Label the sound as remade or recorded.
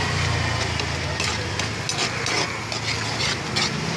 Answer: recorded